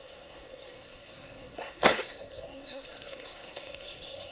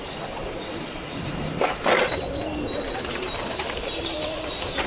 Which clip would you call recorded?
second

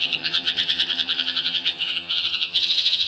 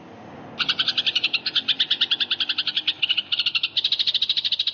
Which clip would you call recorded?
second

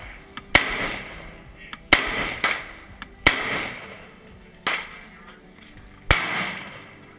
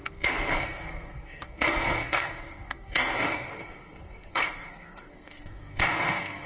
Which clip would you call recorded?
first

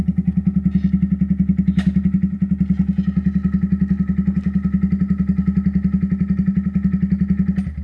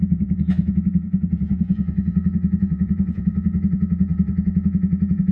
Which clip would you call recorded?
first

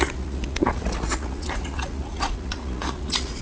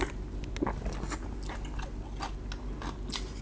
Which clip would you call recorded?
second